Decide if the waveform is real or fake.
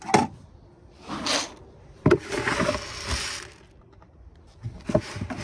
real